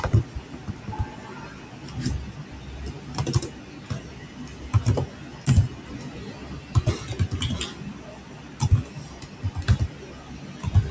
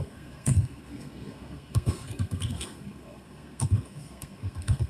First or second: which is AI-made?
second